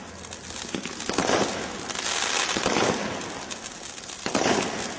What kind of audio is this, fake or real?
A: real